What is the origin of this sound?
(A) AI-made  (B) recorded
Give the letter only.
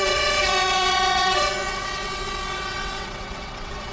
A